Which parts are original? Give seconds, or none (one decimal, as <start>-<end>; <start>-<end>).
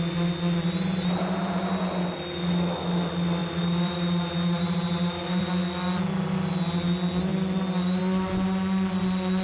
0.0-3.4; 5.5-9.4